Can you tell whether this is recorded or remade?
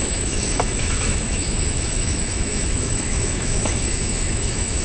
remade